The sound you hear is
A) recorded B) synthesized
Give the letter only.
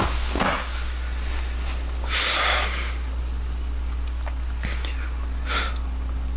A